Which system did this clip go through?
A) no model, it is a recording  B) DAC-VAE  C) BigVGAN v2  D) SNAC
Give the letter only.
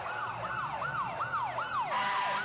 A